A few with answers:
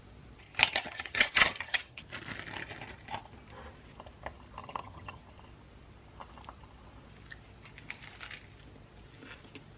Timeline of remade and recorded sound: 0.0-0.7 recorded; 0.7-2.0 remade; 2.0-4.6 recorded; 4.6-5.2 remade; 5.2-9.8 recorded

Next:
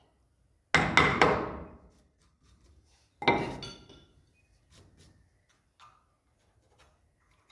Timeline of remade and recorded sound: 0.0-1.1 recorded; 1.1-3.1 remade; 3.1-7.5 recorded

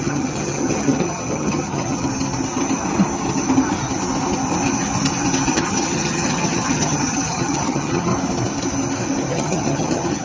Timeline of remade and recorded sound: 0.0-2.1 remade; 2.1-5.5 recorded; 5.5-8.1 remade; 8.1-9.3 recorded; 9.3-10.2 remade